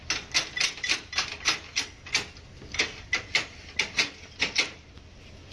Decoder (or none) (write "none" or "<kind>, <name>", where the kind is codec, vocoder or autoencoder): none